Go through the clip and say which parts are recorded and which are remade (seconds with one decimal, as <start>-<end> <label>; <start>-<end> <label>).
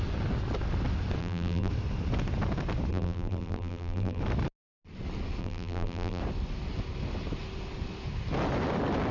0.0-1.2 recorded; 1.2-1.7 remade; 1.7-2.9 recorded; 2.9-4.2 remade; 4.2-5.4 recorded; 5.4-6.2 remade; 6.2-9.1 recorded